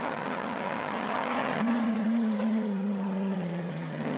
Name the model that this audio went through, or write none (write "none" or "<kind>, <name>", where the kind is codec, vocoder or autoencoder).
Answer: vocoder, HiFi-GAN